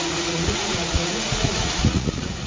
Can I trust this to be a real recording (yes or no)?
no